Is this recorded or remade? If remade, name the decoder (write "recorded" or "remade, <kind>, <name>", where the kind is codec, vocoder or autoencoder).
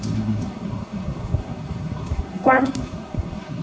remade, codec, SNAC